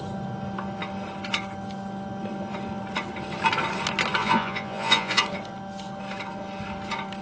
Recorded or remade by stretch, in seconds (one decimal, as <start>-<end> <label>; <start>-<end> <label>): 0.0-4.2 recorded; 4.2-5.2 remade; 5.2-7.2 recorded